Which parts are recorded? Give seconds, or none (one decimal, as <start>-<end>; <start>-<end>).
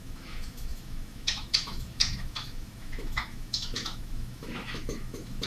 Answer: none